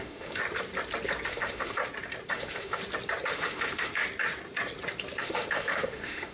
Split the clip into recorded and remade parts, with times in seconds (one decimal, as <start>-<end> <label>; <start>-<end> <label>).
0.0-0.4 remade; 0.4-1.3 recorded; 1.3-1.8 remade; 1.8-2.3 recorded; 2.3-2.8 remade; 2.8-3.3 recorded; 3.3-4.0 remade; 4.0-5.2 recorded; 5.2-6.3 remade